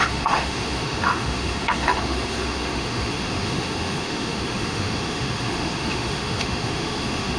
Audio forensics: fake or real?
fake